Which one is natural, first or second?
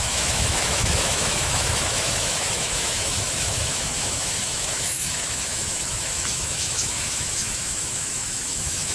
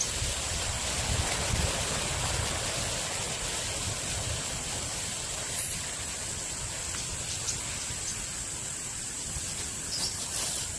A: second